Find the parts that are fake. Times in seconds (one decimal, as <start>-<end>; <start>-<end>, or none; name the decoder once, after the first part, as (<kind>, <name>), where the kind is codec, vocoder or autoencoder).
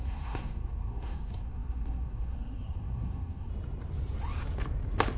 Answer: 0.0-3.5 (codec, SNAC)